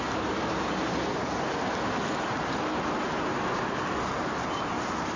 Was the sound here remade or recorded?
recorded